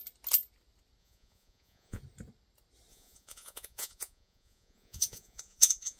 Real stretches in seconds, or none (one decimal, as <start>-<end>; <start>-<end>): 0.0-1.0; 2.0-2.9